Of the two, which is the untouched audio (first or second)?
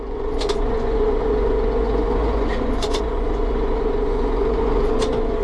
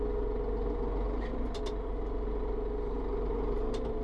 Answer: second